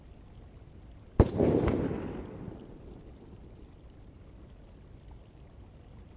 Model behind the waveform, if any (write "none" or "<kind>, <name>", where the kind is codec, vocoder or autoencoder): none